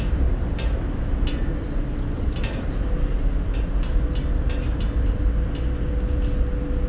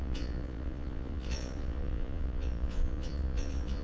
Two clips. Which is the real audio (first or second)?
first